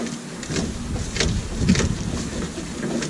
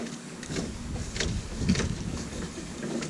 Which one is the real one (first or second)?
first